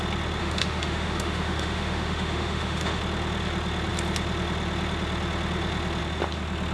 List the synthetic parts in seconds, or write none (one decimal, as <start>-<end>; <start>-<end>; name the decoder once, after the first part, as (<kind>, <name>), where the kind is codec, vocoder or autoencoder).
0.4-3.0 (autoencoder, DAC-VAE)